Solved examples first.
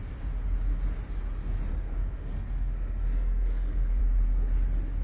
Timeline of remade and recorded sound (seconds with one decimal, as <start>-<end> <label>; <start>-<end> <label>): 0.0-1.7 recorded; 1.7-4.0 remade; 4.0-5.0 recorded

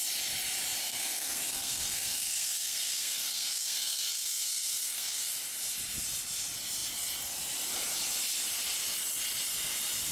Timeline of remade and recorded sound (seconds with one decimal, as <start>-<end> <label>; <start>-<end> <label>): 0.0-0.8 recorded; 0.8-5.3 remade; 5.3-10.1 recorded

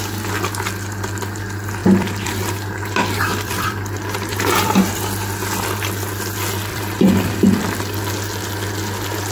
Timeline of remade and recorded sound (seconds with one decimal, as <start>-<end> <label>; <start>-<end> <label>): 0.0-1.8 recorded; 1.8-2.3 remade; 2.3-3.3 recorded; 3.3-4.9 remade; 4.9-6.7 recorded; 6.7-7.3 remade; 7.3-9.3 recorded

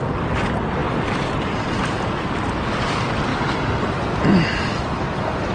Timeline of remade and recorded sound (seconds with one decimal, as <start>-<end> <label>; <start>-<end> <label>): 0.0-5.5 recorded

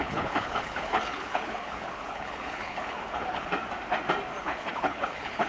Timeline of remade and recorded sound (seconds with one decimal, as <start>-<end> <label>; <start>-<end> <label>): 0.0-3.5 remade; 3.5-4.4 recorded; 4.4-5.5 remade

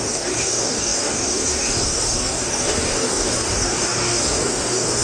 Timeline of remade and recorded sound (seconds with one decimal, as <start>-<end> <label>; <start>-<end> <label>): 0.0-5.0 remade

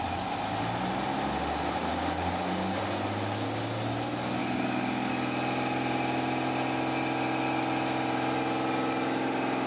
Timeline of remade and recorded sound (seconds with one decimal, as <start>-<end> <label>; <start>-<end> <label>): 0.0-1.9 recorded; 1.9-2.8 remade; 2.8-4.4 recorded; 4.4-5.1 remade; 5.1-9.7 recorded

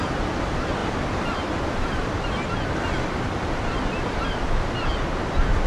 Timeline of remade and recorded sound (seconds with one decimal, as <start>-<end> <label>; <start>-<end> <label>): 0.0-5.7 recorded